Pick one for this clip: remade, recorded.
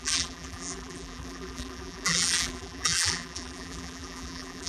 remade